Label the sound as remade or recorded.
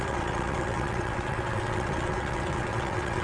remade